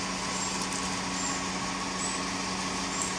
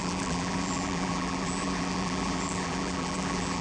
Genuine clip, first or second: first